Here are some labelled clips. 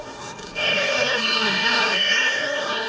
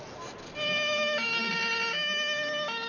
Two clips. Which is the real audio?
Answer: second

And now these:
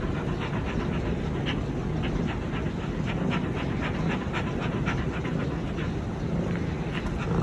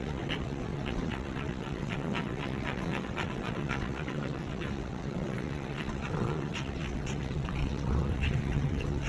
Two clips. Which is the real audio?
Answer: first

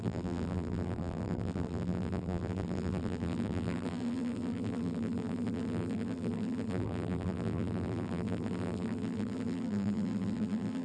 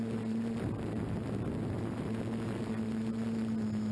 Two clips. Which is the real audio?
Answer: second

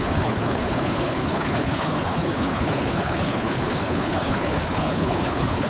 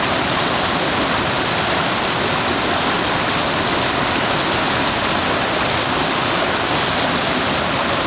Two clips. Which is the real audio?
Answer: second